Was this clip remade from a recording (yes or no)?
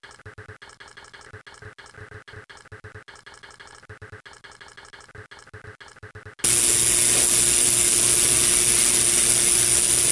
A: no